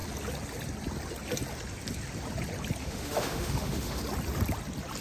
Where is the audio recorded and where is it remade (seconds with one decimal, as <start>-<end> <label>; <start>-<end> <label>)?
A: 0.0-2.8 recorded; 2.8-4.0 remade; 4.0-5.0 recorded